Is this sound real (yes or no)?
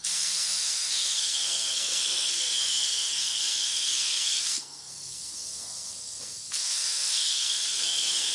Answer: no